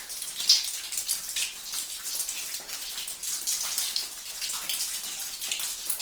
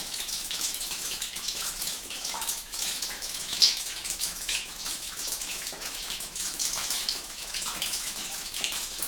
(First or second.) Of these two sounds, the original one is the first